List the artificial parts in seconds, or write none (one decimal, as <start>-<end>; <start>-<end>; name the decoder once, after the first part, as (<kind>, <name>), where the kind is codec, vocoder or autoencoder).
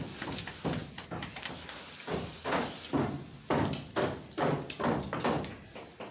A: none